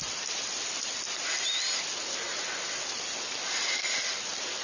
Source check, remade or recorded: recorded